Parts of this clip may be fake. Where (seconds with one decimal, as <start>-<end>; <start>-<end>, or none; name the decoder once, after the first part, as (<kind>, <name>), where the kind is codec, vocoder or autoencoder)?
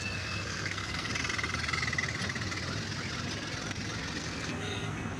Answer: 0.0-1.1 (codec, SNAC); 4.2-5.2